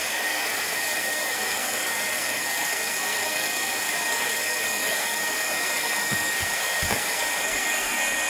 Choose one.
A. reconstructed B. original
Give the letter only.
A